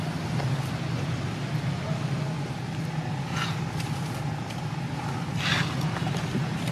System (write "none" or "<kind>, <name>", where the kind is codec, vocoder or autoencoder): none